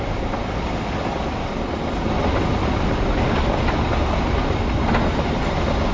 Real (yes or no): yes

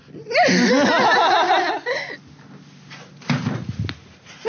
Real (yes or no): yes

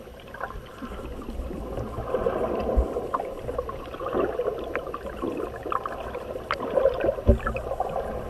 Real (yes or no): yes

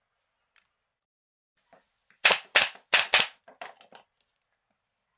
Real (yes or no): yes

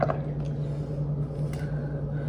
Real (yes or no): yes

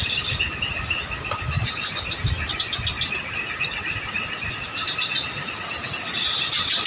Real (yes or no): yes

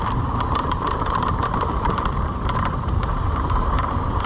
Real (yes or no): no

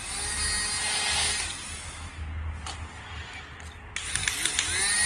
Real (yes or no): yes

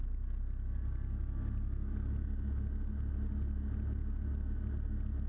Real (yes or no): yes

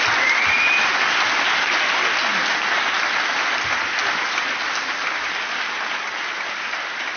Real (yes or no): yes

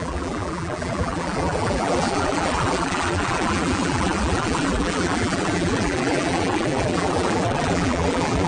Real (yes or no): no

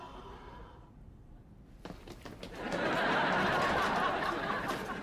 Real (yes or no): yes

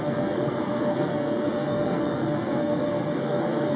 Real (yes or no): no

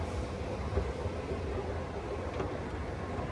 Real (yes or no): yes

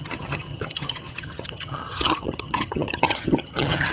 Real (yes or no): no